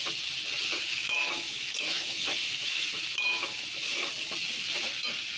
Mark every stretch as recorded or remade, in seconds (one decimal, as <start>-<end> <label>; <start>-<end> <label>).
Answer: 0.0-0.9 recorded; 0.9-4.1 remade; 4.1-5.4 recorded